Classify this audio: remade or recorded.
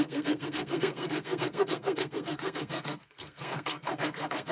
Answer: remade